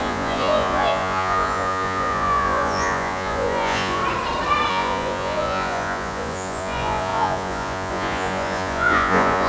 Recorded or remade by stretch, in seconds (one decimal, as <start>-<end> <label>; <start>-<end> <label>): 0.0-4.0 remade; 4.0-4.7 recorded; 4.7-9.5 remade